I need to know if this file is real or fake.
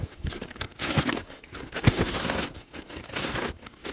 fake